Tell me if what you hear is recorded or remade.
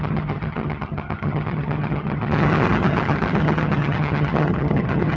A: remade